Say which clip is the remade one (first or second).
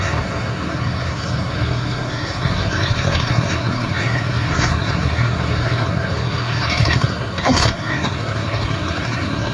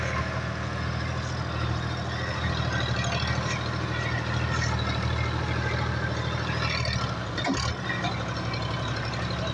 first